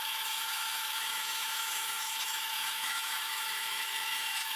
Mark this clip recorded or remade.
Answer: remade